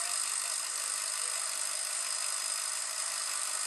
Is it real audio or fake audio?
real